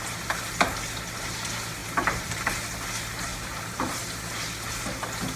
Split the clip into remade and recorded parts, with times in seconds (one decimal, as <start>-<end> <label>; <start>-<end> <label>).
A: 0.0-1.8 recorded; 1.8-2.5 remade; 2.5-3.3 recorded; 3.3-4.2 remade; 4.2-5.4 recorded